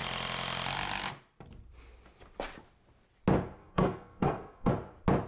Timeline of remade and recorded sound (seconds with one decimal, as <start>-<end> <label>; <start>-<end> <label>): 0.0-3.6 recorded; 3.6-4.7 remade; 4.7-5.3 recorded